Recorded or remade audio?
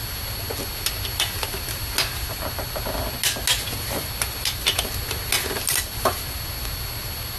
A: recorded